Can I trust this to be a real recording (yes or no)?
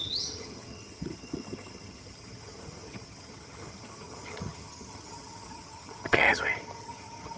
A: no